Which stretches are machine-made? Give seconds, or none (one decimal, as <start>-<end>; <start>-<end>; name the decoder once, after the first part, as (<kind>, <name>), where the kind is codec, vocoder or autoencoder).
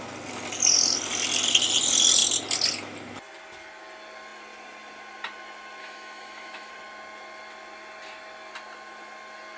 5.8-6.7 (autoencoder, DAC-VAE)